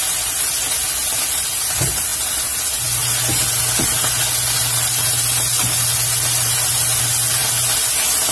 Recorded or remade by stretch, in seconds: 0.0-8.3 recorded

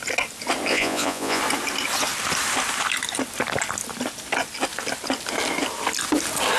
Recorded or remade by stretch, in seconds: 0.0-0.7 recorded; 0.7-1.4 remade; 1.4-6.6 recorded

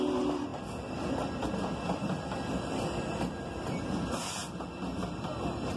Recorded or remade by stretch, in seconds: 0.0-0.5 recorded; 0.5-3.8 remade; 3.8-5.8 recorded

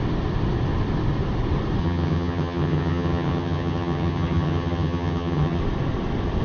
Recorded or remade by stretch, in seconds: 0.0-1.8 recorded; 1.8-5.6 remade; 5.6-6.4 recorded

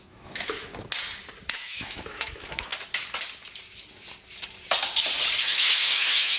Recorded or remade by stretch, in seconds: 0.0-0.7 remade; 0.7-1.5 recorded; 1.5-2.7 remade; 2.7-5.4 recorded; 5.4-6.4 remade

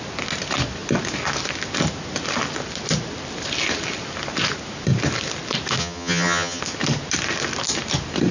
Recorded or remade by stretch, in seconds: 0.0-5.8 recorded; 5.8-6.6 remade; 6.6-8.3 recorded

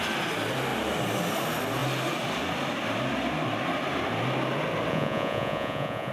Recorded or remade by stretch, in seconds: 0.0-4.9 recorded; 4.9-6.1 remade

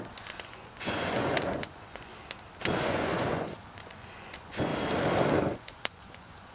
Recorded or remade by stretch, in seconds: 0.0-2.1 remade; 2.1-2.6 recorded; 2.6-4.7 remade; 4.7-5.4 recorded; 5.4-6.5 remade